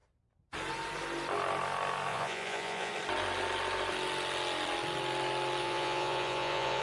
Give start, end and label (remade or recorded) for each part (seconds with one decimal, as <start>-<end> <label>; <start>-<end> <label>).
0.0-2.1 recorded; 2.1-2.9 remade; 2.9-5.6 recorded; 5.6-6.8 remade